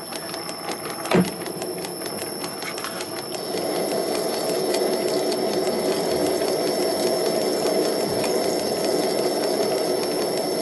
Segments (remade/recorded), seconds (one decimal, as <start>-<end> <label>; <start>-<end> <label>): 0.0-10.6 recorded